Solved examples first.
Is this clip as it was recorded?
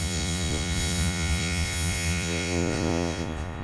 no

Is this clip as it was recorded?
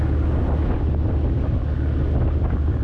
yes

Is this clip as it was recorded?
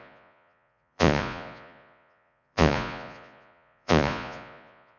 no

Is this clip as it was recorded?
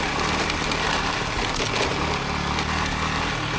yes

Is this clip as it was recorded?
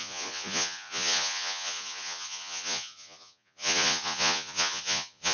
no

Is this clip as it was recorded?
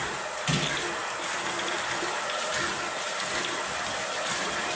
yes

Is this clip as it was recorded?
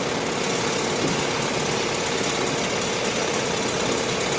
yes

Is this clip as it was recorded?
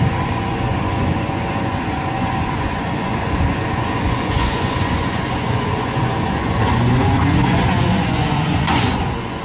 no